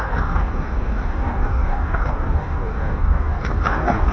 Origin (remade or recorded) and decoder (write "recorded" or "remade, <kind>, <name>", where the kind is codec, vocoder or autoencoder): remade, codec, DAC